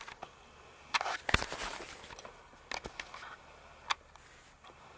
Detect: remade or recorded recorded